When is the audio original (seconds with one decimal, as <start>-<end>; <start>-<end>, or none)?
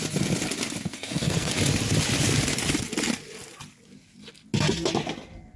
0.0-0.9; 1.5-5.6